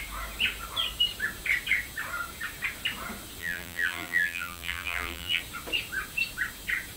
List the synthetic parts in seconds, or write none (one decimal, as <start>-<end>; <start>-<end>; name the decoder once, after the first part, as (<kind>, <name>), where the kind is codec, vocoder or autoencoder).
3.4-5.4 (vocoder, BigVGAN v2)